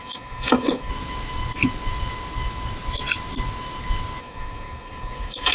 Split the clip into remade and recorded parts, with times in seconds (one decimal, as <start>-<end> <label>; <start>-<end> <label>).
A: 0.0-0.9 remade; 0.9-4.2 recorded; 4.2-5.5 remade